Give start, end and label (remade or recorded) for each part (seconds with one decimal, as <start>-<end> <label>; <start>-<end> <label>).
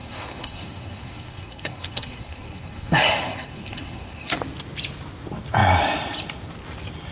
0.0-4.3 remade; 4.3-7.1 recorded